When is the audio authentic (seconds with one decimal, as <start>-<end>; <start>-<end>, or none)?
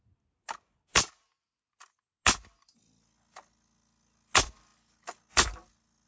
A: 0.0-6.1